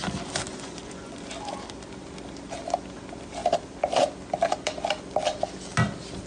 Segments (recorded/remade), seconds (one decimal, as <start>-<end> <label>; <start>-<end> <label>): 0.0-0.5 recorded; 0.5-1.3 remade; 1.3-6.3 recorded